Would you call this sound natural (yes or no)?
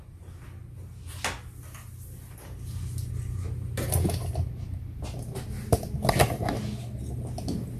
yes